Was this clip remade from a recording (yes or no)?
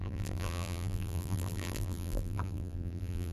yes